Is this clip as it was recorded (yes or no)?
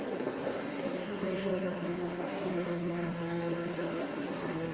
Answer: no